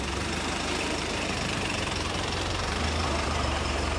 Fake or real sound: fake